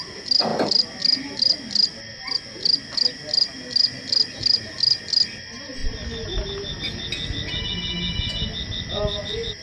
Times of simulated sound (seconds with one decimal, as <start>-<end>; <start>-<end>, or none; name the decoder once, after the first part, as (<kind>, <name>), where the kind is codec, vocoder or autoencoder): none